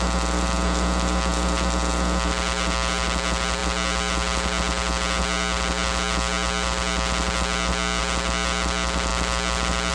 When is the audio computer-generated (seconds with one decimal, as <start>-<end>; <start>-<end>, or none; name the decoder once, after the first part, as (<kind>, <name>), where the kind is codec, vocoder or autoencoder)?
none